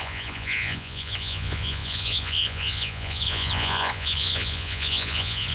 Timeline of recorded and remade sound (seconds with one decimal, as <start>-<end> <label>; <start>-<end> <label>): 0.0-5.5 remade